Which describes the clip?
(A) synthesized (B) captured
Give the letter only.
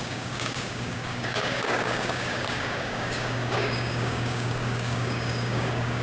A